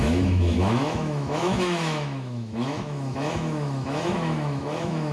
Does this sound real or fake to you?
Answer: fake